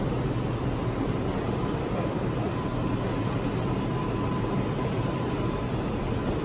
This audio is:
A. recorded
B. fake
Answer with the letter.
A